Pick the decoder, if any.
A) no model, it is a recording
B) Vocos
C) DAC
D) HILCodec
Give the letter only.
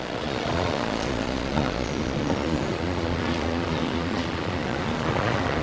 B